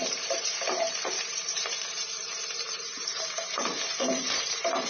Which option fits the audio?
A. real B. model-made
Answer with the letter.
B